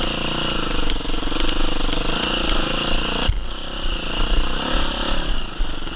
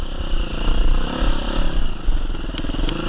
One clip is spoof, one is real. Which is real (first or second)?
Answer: first